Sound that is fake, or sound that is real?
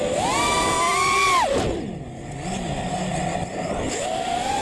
real